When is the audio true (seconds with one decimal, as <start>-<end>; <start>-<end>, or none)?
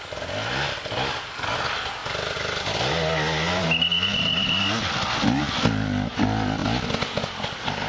0.0-7.9